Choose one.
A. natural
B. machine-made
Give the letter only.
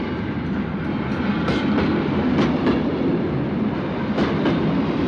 A